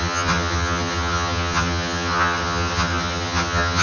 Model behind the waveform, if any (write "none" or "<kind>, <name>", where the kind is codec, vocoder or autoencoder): vocoder, HiFi-GAN